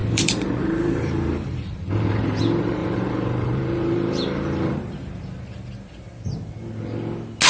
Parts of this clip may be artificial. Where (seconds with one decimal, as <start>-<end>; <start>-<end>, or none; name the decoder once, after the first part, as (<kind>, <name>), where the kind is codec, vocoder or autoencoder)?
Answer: 0.0-2.4 (vocoder, BigVGAN v2); 2.8-5.2